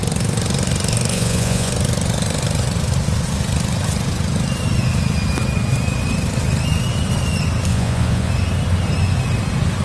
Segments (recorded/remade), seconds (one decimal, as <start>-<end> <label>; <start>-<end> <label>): 0.0-1.1 recorded; 1.1-1.7 remade; 1.7-7.7 recorded; 7.7-8.3 remade; 8.3-9.8 recorded